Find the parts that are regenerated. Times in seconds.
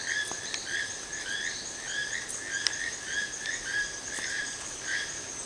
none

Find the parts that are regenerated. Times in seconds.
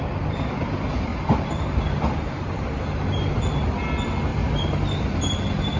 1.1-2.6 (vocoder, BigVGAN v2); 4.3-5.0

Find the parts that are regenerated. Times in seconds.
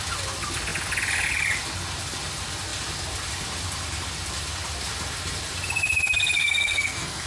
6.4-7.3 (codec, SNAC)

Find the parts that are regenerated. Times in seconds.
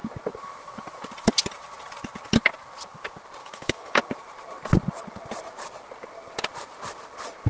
3.4-4.0 (autoencoder, DAC-VAE)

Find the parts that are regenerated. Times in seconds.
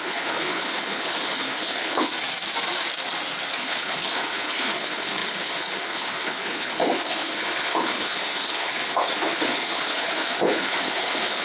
0.0-2.1 (codec, HILCodec); 3.6-11.4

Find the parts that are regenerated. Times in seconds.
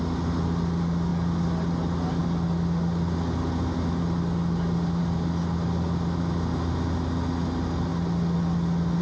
none